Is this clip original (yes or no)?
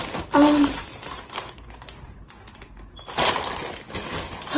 yes